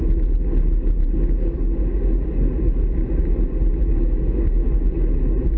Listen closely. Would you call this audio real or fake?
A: real